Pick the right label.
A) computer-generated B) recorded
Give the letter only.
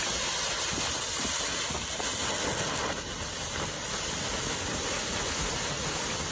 B